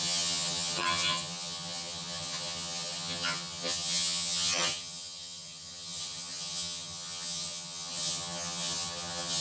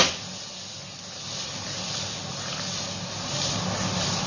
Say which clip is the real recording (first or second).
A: second